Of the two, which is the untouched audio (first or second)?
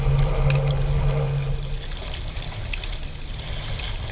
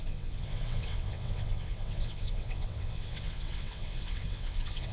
first